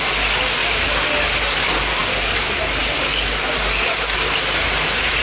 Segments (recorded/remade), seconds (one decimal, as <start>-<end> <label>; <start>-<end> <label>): 0.0-5.2 recorded